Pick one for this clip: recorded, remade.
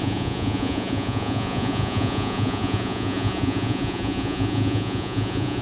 remade